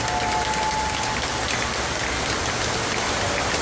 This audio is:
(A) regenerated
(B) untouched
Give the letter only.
B